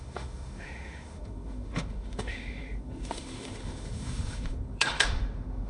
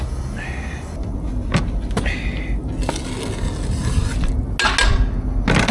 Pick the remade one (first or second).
first